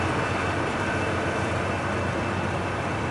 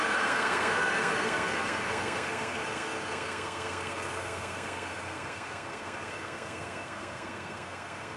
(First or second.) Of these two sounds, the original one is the first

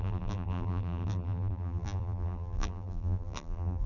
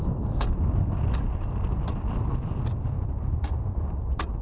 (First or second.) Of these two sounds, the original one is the second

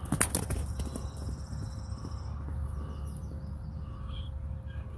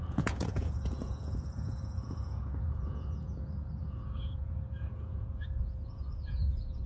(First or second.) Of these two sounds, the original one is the first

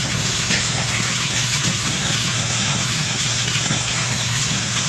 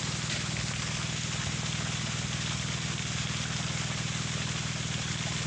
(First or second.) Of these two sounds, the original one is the second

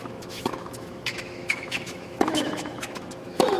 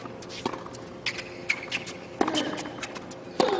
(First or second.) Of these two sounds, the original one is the second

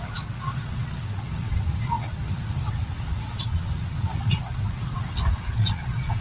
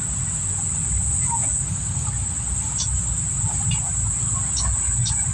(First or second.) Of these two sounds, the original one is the second